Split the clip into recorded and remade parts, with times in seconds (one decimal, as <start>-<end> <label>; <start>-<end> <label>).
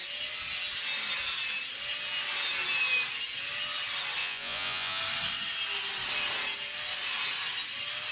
0.0-4.2 recorded; 4.2-5.0 remade; 5.0-8.1 recorded